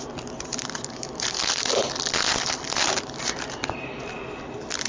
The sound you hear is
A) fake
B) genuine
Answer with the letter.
B